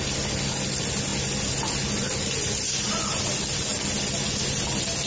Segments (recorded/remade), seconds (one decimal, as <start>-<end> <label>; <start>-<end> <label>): 0.0-5.1 recorded